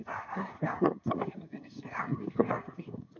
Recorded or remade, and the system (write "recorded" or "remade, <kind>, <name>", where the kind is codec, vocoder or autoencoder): remade, codec, SNAC